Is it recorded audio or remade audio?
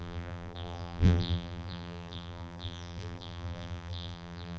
remade